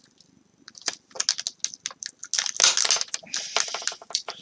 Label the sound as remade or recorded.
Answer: recorded